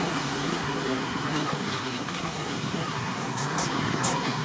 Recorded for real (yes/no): no